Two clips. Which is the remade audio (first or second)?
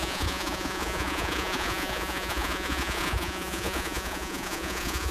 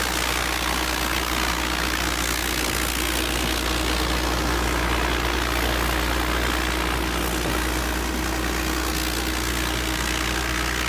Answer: first